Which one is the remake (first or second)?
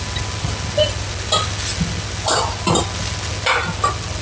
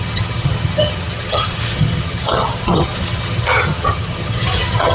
second